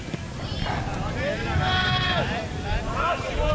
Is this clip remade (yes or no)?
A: no